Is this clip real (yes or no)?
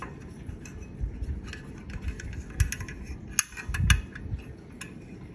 yes